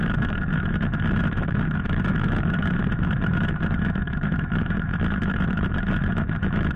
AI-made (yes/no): yes